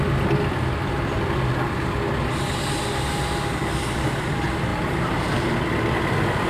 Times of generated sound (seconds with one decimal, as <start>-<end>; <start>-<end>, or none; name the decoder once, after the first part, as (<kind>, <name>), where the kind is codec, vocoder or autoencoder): 4.7-5.6 (vocoder, BigVGAN v2)